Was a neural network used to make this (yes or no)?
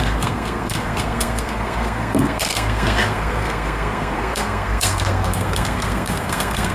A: yes